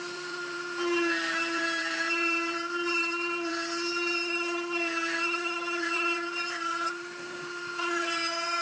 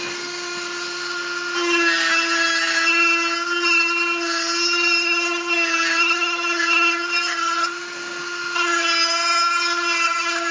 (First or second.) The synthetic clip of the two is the first